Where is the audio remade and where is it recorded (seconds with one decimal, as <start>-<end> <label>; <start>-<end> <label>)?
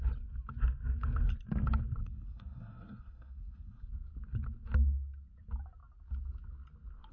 0.0-2.0 recorded; 2.0-3.8 remade; 3.8-7.1 recorded